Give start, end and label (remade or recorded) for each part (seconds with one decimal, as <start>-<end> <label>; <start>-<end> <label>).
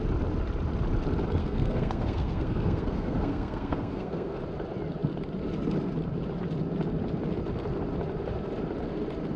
0.0-1.4 recorded; 1.4-4.4 remade; 4.4-9.4 recorded